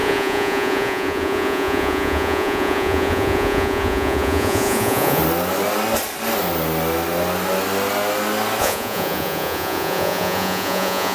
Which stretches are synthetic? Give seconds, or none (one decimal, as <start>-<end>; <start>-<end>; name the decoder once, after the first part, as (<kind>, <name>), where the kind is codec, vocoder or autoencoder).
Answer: 0.0-5.2 (vocoder, Vocos); 8.6-11.1